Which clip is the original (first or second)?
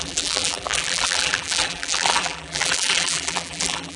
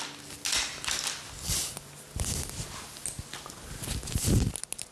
second